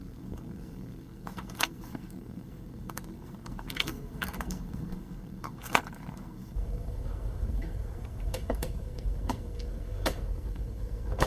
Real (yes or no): no